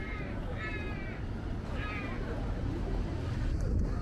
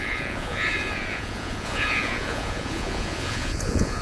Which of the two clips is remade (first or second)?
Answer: second